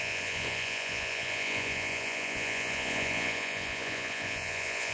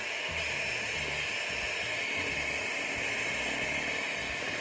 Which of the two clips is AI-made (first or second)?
first